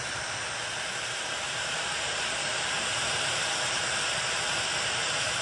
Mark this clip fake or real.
fake